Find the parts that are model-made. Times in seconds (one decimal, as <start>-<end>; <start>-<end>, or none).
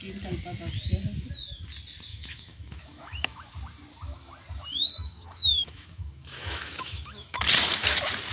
2.1-3.5; 4.9-7.4